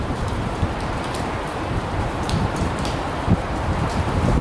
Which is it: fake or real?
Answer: fake